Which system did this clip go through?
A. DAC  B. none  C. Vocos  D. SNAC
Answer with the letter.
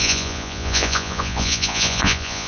C